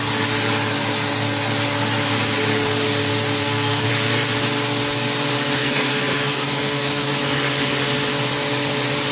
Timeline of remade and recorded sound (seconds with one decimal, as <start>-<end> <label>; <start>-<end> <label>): 0.0-3.4 recorded; 3.4-3.9 remade; 3.9-5.6 recorded; 5.6-7.1 remade; 7.1-9.1 recorded